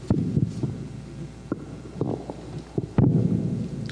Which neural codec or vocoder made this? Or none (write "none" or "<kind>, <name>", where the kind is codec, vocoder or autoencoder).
none